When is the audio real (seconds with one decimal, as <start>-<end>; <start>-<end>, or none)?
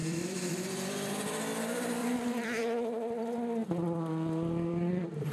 1.1-2.0